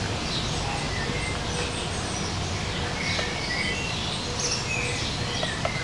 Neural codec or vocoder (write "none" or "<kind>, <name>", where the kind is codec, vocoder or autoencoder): none